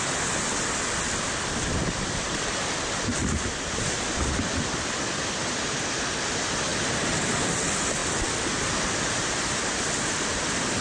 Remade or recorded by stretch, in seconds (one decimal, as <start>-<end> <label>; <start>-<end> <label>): 0.0-3.2 remade; 3.2-6.2 recorded; 6.2-10.8 remade